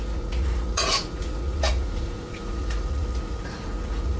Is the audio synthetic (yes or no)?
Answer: yes